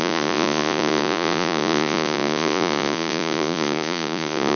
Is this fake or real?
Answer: fake